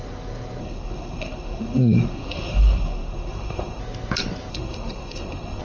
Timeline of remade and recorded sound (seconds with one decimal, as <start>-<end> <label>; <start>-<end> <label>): 0.0-0.6 recorded; 0.6-3.8 remade; 3.8-4.5 recorded; 4.5-5.6 remade